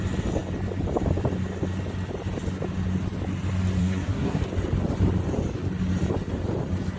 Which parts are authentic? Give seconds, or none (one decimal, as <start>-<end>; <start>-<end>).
0.0-3.8; 4.4-7.0